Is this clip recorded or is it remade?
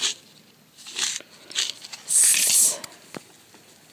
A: recorded